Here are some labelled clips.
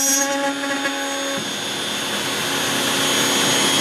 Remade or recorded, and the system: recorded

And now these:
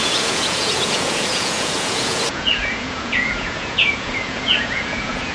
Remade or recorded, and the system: remade, vocoder, Vocos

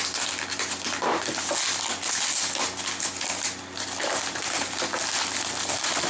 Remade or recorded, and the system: recorded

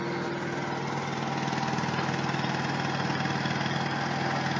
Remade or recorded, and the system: recorded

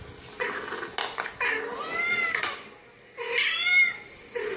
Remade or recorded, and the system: recorded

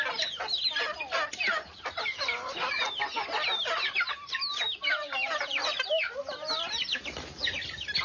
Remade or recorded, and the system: recorded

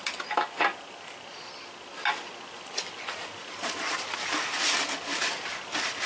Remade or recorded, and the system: recorded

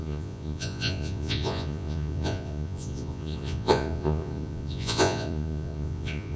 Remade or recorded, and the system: remade, vocoder, Vocos